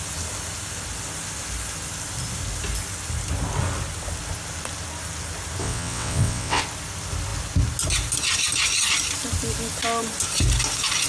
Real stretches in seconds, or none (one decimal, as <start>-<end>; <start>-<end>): 0.0-5.6; 6.6-11.1